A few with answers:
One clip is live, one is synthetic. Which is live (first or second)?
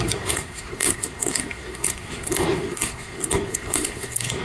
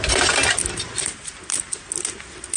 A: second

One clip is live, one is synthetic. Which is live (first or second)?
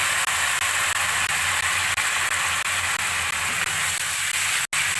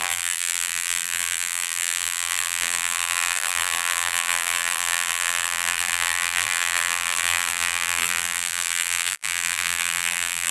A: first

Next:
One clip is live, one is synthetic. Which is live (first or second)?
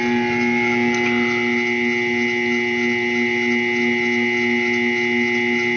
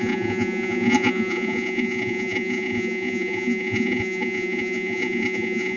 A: first